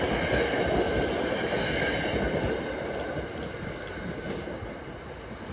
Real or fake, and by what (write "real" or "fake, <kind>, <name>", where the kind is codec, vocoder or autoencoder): real